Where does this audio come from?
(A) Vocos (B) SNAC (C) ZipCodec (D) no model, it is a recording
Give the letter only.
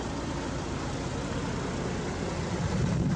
D